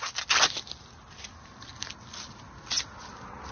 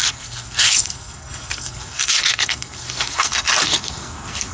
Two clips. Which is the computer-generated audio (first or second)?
second